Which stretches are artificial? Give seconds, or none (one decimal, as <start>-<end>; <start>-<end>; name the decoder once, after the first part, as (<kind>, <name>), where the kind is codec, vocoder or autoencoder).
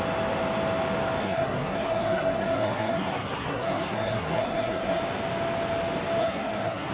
1.2-5.0 (codec, SNAC); 6.2-6.9